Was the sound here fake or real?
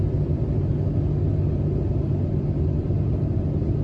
real